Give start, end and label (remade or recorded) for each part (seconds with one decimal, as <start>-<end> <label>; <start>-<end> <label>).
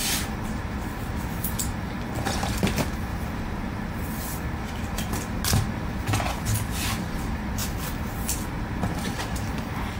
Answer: 0.0-3.1 recorded; 3.1-3.8 remade; 3.8-10.0 recorded